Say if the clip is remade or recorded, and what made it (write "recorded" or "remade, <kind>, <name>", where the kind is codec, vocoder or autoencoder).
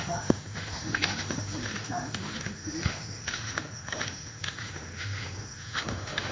remade, autoencoder, DAC-VAE